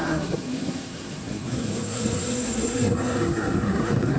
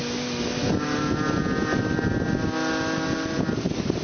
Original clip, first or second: second